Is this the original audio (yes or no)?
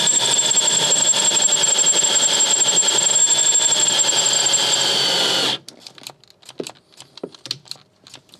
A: yes